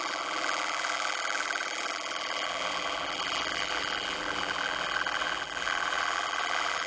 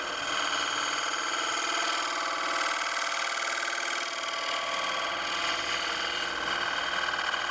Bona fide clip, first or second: second